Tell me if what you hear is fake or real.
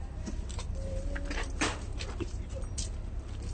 real